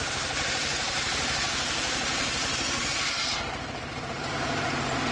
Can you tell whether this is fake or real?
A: fake